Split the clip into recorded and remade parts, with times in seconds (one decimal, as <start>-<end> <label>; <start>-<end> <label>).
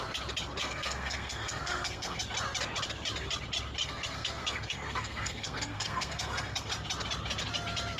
0.0-0.6 recorded; 0.6-2.2 remade; 2.2-3.8 recorded; 3.8-6.7 remade; 6.7-8.0 recorded